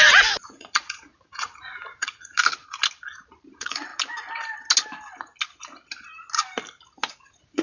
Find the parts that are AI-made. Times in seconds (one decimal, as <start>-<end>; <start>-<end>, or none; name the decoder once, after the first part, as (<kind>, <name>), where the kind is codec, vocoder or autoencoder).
0.0-2.4 (vocoder, Vocos); 3.5-3.9; 7.1-7.6